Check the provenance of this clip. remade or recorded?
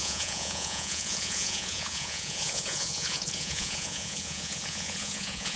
remade